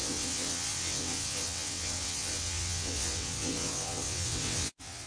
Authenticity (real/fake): fake